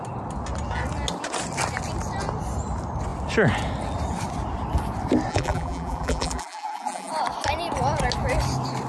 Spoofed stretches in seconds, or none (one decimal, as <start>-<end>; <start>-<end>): 5.3-7.1